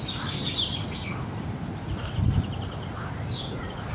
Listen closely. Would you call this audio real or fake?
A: fake